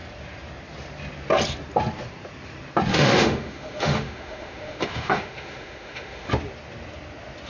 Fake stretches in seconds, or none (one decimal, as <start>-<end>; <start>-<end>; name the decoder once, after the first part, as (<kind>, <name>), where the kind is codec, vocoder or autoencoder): 2.9-6.3 (autoencoder, DAC-VAE)